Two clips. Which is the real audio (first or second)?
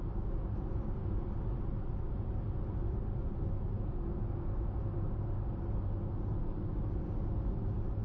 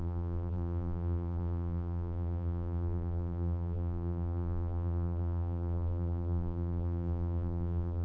first